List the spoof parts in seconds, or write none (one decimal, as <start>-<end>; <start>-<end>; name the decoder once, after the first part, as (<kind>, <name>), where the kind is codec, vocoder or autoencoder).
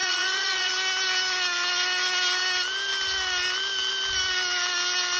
0.0-0.7 (vocoder, Vocos)